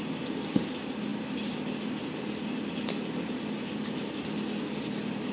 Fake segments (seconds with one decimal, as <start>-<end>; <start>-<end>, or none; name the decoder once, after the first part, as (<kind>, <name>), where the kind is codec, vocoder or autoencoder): none